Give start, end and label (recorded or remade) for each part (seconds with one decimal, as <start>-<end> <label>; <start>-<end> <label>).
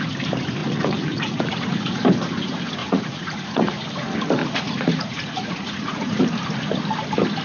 0.0-0.6 recorded; 0.6-2.0 remade; 2.0-2.8 recorded; 2.8-3.7 remade; 3.7-4.4 recorded; 4.4-6.2 remade; 6.2-7.4 recorded